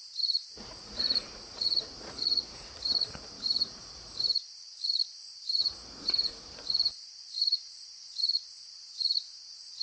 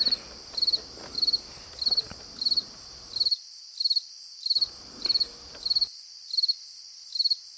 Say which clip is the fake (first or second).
first